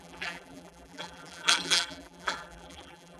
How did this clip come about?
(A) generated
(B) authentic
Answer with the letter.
A